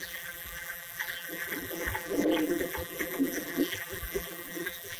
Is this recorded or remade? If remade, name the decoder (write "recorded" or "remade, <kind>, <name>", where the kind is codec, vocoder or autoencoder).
remade, vocoder, BigVGAN v2